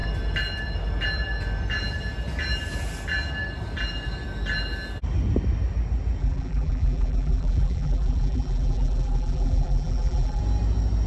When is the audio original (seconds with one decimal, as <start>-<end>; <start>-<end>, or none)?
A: 0.0-6.2; 10.4-11.1